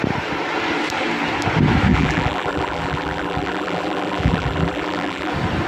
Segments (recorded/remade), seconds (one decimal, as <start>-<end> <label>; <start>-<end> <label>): 0.0-1.9 recorded; 1.9-5.3 remade; 5.3-5.7 recorded